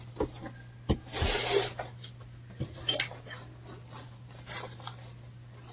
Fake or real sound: real